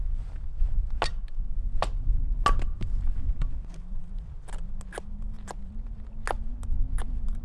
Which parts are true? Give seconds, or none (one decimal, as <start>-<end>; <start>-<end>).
0.0-7.4